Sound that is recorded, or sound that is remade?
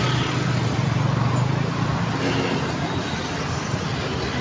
recorded